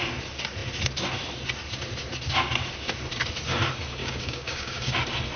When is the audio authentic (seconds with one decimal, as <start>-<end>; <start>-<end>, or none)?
0.0-4.0; 5.0-5.4